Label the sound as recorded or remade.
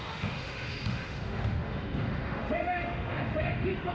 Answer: remade